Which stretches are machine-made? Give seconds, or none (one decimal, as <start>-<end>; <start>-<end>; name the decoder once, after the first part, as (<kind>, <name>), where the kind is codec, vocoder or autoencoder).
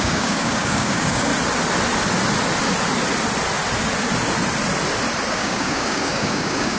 0.0-1.3 (codec, DAC); 5.3-6.8